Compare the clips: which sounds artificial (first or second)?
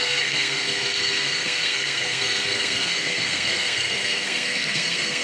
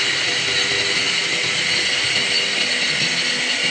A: first